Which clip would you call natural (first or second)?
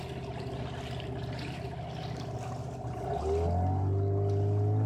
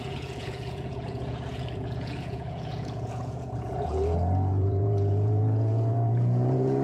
first